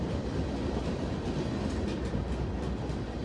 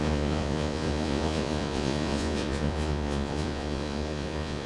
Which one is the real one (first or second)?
first